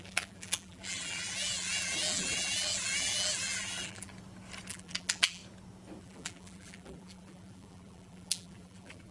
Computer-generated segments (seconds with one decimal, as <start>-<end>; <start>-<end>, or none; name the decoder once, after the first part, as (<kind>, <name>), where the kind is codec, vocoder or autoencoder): 0.0-4.1 (vocoder, BigVGAN v2); 4.7-5.4; 6.0-9.1